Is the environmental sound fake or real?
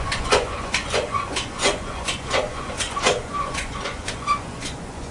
fake